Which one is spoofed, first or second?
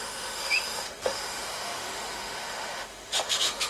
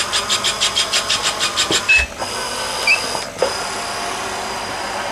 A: first